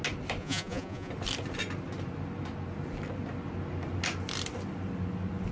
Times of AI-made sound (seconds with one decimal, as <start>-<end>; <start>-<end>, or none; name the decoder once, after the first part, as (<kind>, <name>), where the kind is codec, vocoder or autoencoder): 0.4-1.1 (vocoder, Vocos)